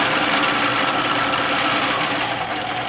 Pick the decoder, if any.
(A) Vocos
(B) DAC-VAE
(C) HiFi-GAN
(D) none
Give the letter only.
D